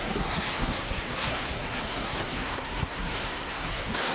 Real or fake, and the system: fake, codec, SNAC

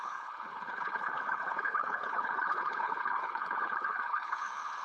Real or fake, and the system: fake, codec, HILCodec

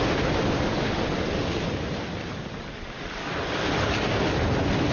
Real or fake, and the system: real